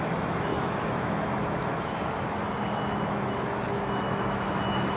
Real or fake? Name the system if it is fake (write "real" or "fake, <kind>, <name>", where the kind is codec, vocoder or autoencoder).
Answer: fake, autoencoder, DAC-VAE